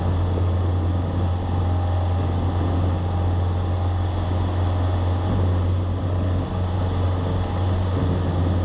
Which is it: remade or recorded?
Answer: recorded